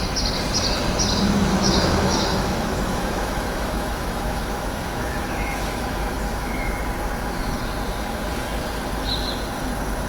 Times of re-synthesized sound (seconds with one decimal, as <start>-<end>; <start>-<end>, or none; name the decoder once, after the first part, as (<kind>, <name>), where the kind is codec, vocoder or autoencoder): 1.5-6.7 (autoencoder, DAC-VAE)